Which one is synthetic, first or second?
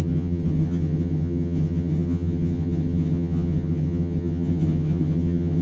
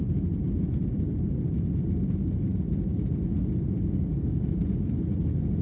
first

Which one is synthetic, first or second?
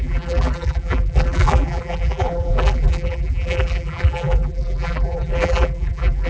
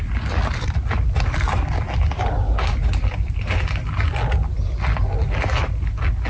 first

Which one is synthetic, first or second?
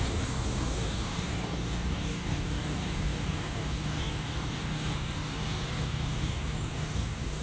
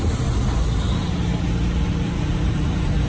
first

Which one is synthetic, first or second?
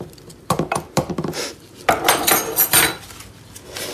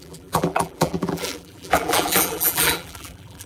second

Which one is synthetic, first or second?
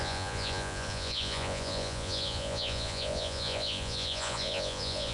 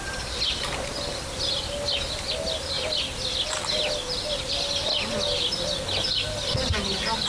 first